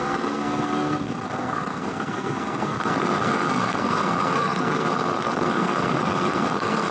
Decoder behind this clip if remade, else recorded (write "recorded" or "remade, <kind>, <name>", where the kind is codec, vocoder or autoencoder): remade, codec, SNAC